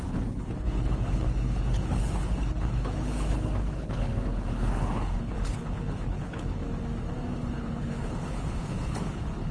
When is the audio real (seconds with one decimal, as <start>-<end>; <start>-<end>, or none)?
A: 6.6-7.5